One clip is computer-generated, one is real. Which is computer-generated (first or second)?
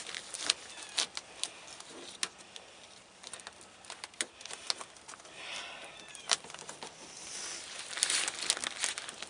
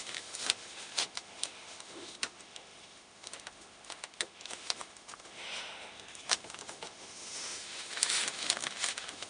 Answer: second